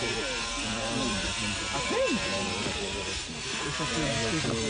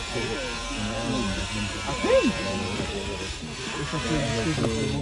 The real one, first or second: second